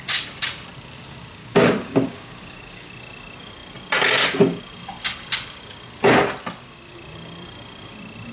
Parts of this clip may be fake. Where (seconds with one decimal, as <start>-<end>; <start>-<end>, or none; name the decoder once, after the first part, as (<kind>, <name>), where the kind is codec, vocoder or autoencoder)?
1.4-2.9 (codec, DAC)